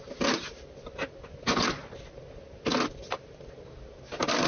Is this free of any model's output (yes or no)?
yes